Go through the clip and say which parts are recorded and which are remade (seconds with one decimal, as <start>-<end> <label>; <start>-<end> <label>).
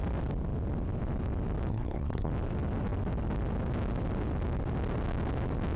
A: 0.0-1.7 recorded; 1.7-2.3 remade; 2.3-5.8 recorded